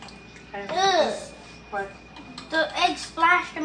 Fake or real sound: real